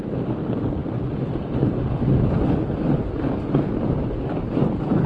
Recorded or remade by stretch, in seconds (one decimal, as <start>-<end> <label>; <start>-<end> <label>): 0.0-0.8 recorded; 0.8-2.4 remade; 2.4-5.1 recorded

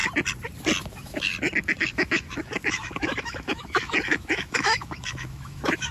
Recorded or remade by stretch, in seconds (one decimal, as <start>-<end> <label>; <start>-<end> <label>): 0.0-0.9 recorded; 0.9-1.3 remade; 1.3-1.9 recorded; 1.9-5.9 remade

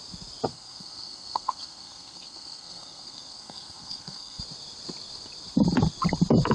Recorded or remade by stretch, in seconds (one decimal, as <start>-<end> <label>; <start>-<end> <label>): 0.0-0.5 recorded; 0.5-4.4 remade; 4.4-6.5 recorded

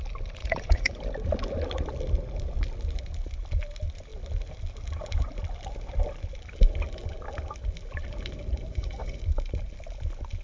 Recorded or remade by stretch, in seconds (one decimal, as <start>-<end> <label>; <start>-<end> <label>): 0.0-0.4 recorded; 0.4-1.0 remade; 1.0-8.7 recorded; 8.7-9.2 remade; 9.2-10.4 recorded

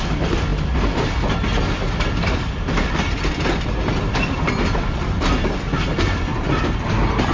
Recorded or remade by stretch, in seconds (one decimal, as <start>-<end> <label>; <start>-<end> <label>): 0.0-7.3 recorded

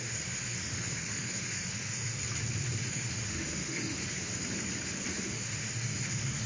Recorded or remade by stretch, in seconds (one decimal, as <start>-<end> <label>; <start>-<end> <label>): 0.0-2.2 remade; 2.2-2.8 recorded; 2.8-4.3 remade; 4.3-5.1 recorded; 5.1-6.5 remade

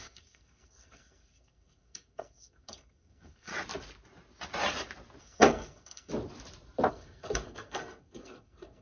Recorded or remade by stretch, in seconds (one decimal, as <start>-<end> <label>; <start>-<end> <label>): 0.0-3.5 remade; 3.5-5.2 recorded; 5.2-6.1 remade; 6.1-6.9 recorded; 6.9-8.8 remade

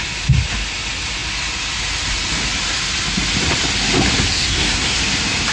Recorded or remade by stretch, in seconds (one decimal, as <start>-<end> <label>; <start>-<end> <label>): 0.0-4.3 recorded; 4.3-5.0 remade; 5.0-5.5 recorded